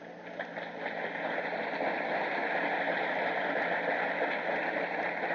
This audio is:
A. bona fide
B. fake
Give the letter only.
A